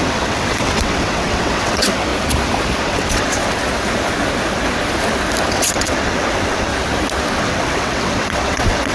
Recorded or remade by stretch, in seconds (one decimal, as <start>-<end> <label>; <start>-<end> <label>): 0.0-2.1 remade; 2.1-2.8 recorded; 2.8-3.4 remade; 3.4-5.5 recorded; 5.5-6.7 remade; 6.7-7.4 recorded; 7.4-8.9 remade